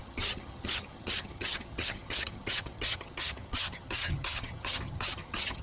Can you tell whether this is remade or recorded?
remade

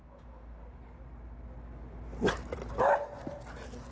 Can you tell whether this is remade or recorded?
recorded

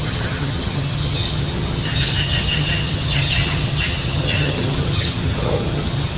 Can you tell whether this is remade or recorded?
remade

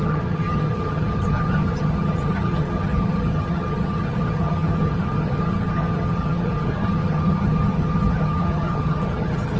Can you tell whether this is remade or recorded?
remade